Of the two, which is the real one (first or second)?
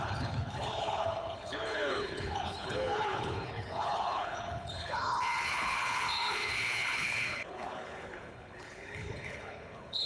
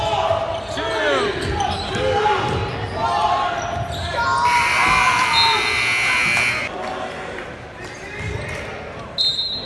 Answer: second